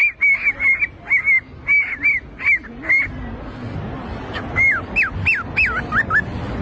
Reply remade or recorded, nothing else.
recorded